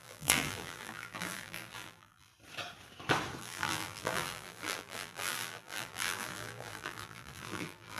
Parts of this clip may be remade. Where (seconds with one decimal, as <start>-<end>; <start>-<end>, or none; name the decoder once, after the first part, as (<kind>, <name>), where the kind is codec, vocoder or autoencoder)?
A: 0.0-2.3 (vocoder, BigVGAN v2); 3.4-8.0